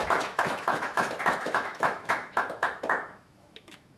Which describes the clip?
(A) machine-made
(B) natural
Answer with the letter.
A